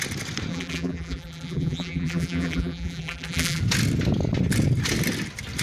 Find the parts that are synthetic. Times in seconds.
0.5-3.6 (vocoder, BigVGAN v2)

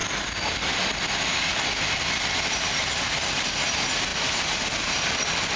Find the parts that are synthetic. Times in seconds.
0.0-1.6 (vocoder, BigVGAN v2); 4.1-5.6

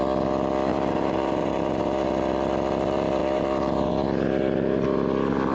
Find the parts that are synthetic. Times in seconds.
0.7-2.0 (vocoder, BigVGAN v2); 3.2-3.9

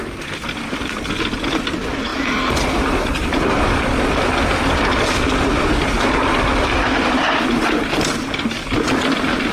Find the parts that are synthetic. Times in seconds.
none

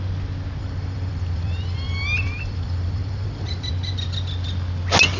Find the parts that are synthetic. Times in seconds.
0.6-3.7 (vocoder, BigVGAN v2)

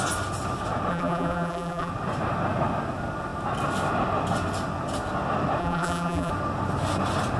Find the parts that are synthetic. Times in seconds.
0.9-1.9 (vocoder, BigVGAN v2); 5.6-6.3

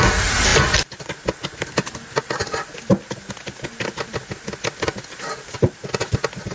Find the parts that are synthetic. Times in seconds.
none